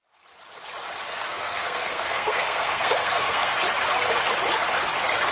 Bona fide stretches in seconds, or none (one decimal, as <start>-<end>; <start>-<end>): 0.0-1.1; 3.6-5.3